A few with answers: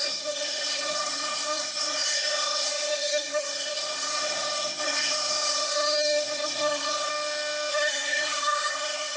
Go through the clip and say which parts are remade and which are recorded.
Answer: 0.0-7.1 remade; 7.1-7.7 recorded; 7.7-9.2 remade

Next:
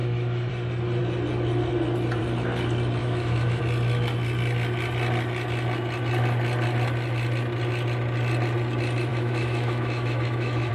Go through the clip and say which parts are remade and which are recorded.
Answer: 0.0-0.5 remade; 0.5-3.0 recorded; 3.0-3.6 remade; 3.6-9.1 recorded; 9.1-10.7 remade

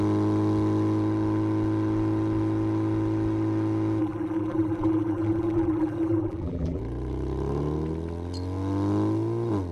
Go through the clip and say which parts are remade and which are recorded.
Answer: 0.0-4.0 recorded; 4.0-6.8 remade; 6.8-9.7 recorded